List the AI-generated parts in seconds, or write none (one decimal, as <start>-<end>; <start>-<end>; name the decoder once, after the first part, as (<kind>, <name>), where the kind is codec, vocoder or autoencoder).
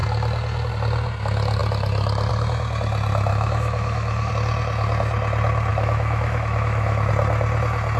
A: 3.3-4.3 (autoencoder, DAC-VAE); 5.7-7.1